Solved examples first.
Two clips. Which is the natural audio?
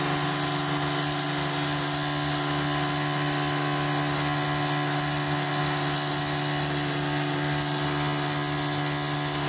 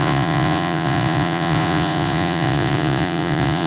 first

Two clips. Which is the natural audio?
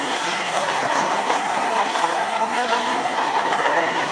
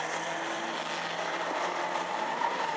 second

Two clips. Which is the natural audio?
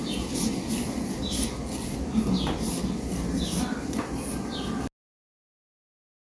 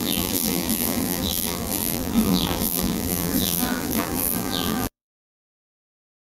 first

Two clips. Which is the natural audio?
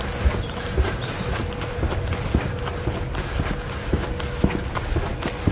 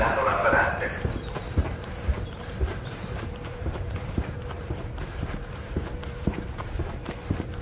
first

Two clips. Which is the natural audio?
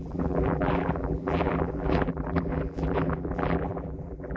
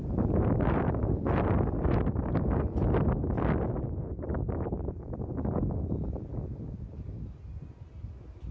second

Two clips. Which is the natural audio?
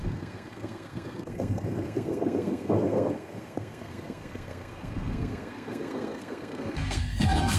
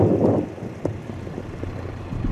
second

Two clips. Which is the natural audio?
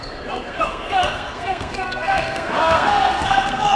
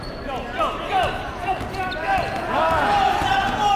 second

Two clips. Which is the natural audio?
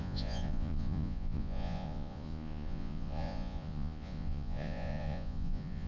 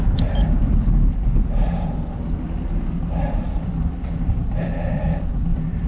second